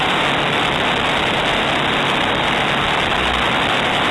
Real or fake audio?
fake